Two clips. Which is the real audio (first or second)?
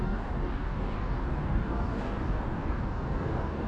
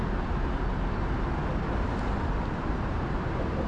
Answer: second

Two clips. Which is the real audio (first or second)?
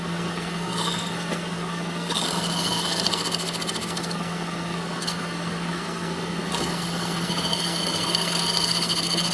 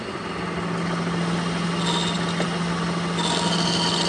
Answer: second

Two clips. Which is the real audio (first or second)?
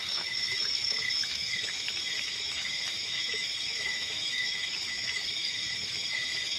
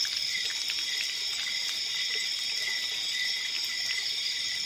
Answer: second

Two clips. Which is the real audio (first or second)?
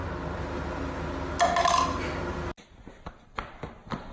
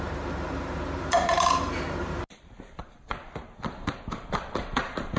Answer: first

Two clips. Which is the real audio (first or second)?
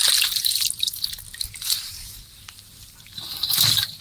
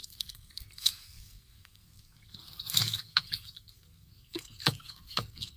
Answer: first